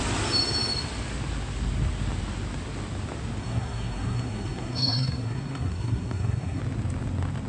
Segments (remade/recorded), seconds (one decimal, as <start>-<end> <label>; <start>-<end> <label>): 0.0-3.4 recorded; 3.4-6.6 remade; 6.6-7.5 recorded